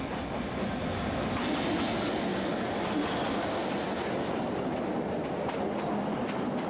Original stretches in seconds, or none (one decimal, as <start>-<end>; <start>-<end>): 0.0-6.7